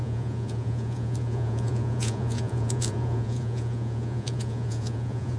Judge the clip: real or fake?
fake